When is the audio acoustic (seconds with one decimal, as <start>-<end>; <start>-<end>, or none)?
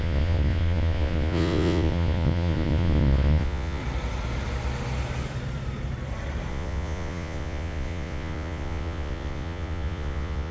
3.8-6.5